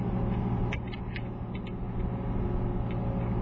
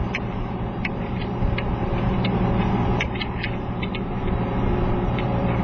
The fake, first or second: second